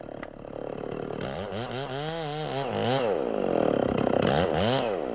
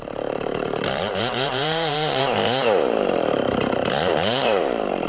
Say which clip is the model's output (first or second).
second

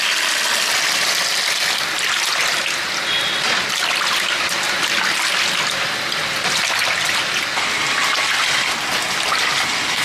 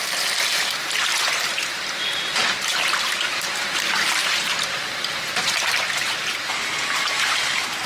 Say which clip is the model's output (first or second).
second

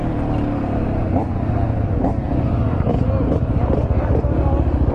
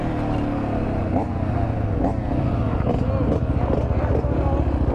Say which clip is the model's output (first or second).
first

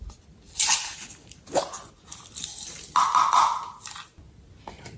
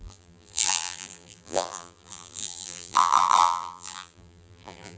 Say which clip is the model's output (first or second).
second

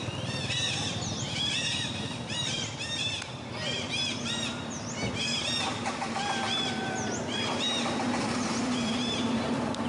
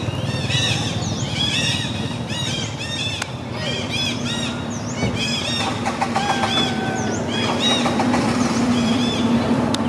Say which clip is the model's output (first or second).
first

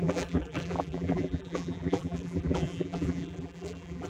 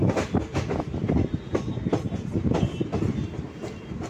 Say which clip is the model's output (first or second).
first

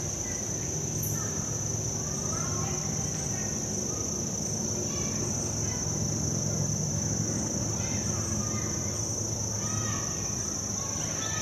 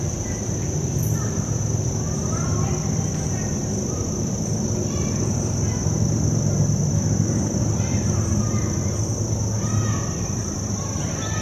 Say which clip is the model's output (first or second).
second